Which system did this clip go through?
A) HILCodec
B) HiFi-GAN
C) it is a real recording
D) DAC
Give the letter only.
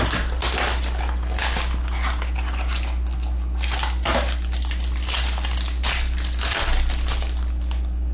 C